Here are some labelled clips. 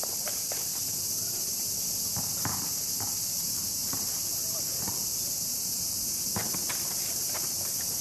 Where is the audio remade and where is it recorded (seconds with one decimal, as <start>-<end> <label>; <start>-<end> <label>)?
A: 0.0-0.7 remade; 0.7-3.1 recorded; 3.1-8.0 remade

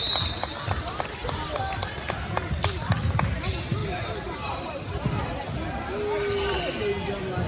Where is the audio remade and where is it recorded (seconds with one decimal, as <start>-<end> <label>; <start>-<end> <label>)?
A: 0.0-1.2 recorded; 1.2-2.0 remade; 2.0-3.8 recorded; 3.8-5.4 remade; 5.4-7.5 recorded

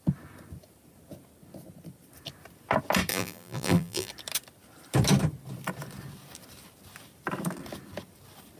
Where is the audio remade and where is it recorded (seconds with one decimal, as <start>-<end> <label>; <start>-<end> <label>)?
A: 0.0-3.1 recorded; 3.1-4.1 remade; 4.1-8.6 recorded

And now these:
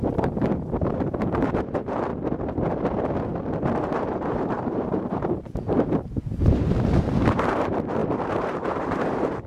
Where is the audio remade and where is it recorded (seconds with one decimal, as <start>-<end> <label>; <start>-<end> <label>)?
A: 0.0-2.1 remade; 2.1-3.6 recorded; 3.6-9.5 remade

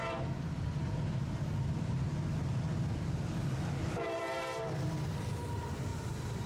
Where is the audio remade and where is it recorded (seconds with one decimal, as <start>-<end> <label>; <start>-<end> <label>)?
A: 0.0-3.4 recorded; 3.4-4.2 remade; 4.2-5.9 recorded; 5.9-6.5 remade